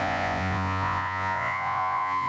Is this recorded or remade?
remade